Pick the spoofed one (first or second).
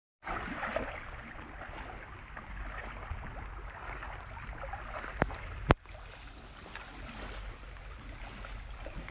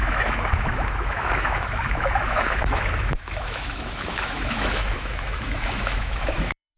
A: second